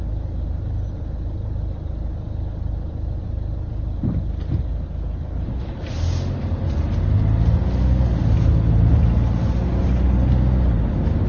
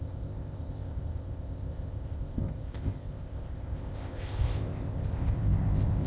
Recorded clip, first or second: first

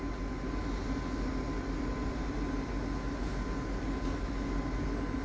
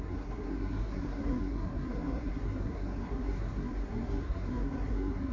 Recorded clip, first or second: first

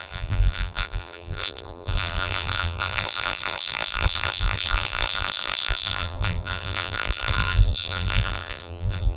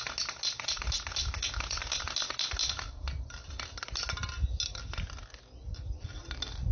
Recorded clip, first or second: second